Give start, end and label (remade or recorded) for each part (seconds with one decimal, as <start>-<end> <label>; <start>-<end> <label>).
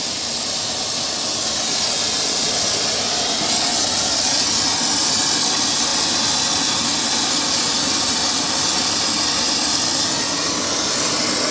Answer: 0.0-11.5 recorded